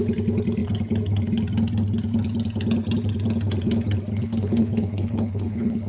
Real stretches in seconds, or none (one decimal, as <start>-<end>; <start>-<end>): 0.0-4.1